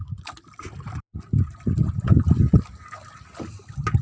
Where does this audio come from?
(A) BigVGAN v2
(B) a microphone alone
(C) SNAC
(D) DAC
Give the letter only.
B